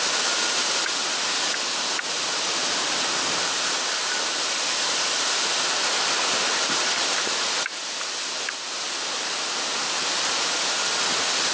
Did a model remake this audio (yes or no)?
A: no